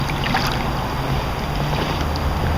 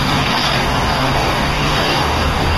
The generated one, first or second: second